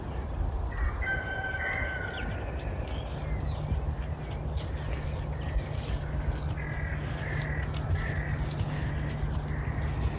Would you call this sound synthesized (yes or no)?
no